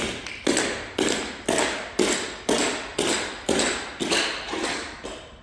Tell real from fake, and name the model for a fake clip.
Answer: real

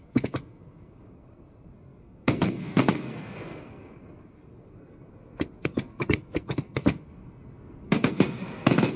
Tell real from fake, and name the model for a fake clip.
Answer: fake, codec, SNAC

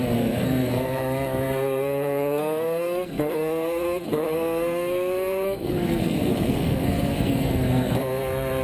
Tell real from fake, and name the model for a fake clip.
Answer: fake, codec, SNAC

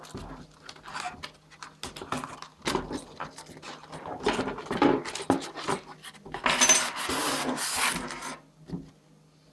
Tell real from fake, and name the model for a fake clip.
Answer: real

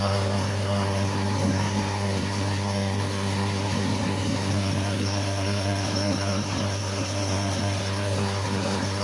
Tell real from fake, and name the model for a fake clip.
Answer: fake, codec, SNAC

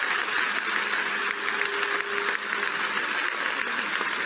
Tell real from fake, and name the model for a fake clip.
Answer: real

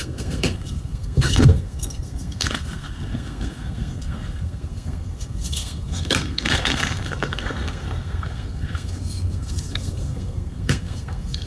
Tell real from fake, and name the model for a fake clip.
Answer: fake, codec, SNAC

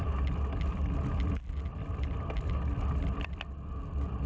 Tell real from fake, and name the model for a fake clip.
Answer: real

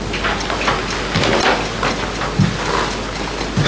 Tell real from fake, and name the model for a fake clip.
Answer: real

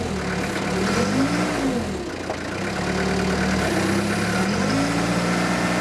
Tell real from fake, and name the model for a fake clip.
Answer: real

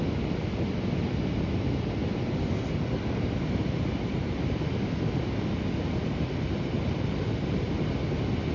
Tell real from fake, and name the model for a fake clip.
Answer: real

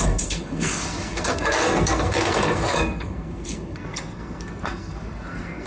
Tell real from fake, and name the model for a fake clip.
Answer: fake, codec, SNAC